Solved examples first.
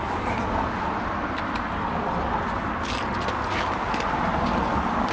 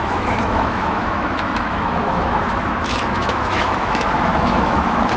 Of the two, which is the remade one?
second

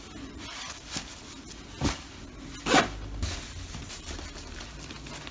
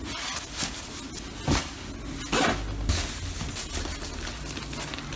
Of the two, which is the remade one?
first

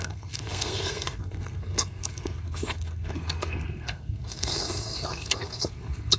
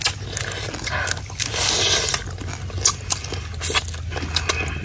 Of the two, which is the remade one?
first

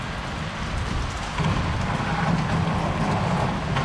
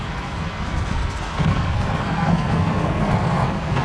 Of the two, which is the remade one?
second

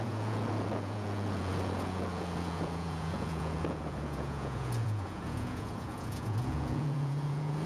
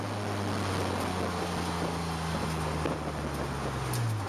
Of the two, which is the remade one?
first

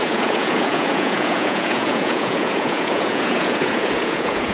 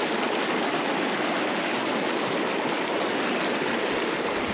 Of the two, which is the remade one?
first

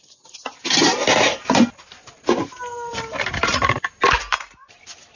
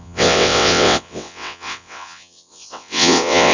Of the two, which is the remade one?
second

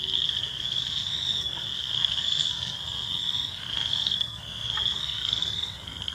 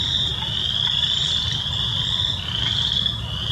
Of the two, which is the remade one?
first